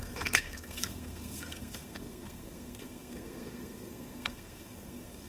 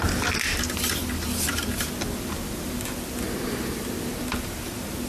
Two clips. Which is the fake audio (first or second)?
first